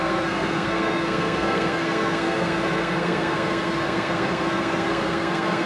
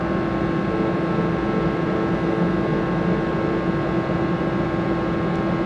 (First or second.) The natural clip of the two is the second